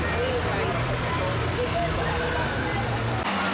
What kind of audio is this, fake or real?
real